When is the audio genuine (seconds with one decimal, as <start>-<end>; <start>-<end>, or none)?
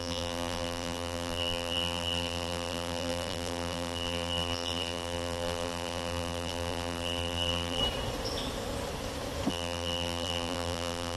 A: 7.8-9.5